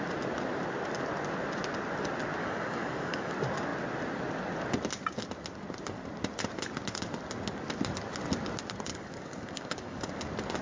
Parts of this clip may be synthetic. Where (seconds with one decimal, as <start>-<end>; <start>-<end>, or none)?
2.4-3.3; 8.9-10.1